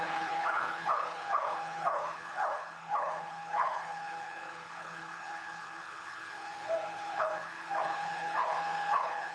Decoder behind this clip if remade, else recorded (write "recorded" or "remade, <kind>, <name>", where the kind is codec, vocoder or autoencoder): remade, codec, HILCodec